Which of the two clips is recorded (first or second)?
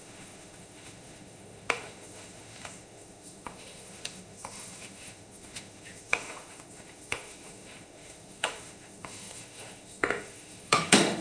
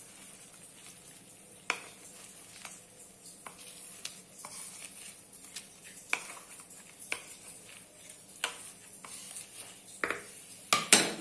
second